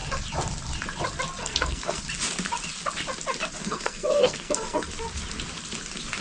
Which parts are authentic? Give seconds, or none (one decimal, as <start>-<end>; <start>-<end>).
0.0-1.4; 2.0-3.6; 4.9-6.2